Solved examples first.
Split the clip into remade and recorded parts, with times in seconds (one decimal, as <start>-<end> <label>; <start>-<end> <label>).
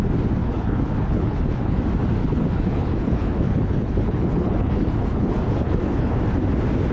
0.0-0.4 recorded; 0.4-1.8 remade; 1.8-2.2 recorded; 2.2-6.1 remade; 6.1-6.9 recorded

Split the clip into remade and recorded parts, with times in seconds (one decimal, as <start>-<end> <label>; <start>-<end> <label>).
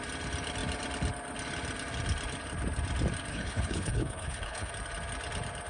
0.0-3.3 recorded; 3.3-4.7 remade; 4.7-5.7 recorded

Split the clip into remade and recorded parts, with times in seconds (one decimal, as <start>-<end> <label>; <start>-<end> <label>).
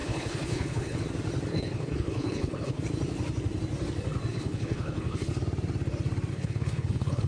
0.0-1.0 remade; 1.0-1.5 recorded; 1.5-2.8 remade; 2.8-4.3 recorded; 4.3-5.3 remade; 5.3-6.3 recorded; 6.3-7.3 remade